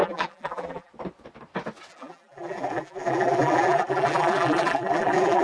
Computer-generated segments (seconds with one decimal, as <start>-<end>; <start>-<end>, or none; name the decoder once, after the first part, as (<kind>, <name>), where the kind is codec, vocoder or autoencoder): 0.0-0.9 (vocoder, BigVGAN v2); 1.9-5.4